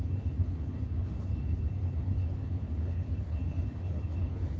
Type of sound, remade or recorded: remade